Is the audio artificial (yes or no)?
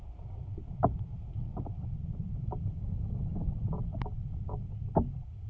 no